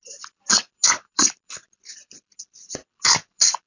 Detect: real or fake real